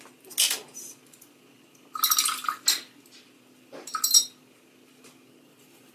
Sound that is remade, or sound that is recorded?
recorded